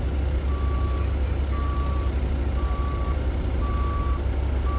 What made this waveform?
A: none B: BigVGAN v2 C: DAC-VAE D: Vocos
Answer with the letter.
A